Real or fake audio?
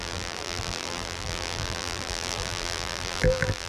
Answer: fake